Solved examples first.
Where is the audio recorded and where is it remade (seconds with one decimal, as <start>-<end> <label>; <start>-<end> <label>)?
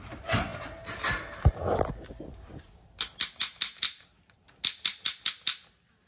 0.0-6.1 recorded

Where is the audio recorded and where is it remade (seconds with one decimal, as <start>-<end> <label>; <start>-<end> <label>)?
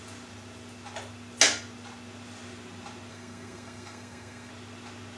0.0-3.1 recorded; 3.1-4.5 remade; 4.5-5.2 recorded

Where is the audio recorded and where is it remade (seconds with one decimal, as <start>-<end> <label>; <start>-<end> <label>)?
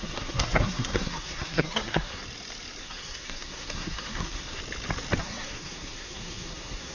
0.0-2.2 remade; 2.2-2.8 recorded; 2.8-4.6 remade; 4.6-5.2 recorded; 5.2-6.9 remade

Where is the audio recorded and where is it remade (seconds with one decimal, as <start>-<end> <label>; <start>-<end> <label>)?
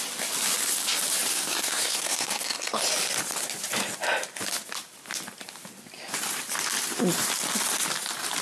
0.0-1.3 recorded; 1.3-2.8 remade; 2.8-8.4 recorded